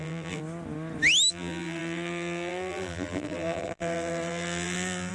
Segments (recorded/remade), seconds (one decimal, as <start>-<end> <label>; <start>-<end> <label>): 0.0-0.4 remade; 0.4-1.3 recorded; 1.3-5.1 remade